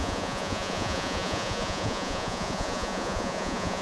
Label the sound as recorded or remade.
remade